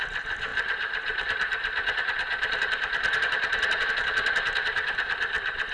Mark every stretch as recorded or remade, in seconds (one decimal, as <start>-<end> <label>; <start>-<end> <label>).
0.0-5.7 remade